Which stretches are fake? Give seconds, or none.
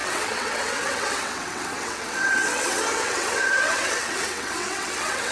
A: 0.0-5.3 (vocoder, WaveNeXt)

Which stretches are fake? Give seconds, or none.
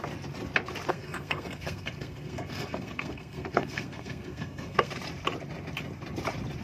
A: 0.9-4.9 (codec, SNAC)